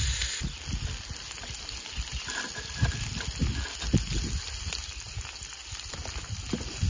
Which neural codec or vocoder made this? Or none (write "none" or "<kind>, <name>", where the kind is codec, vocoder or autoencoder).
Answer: none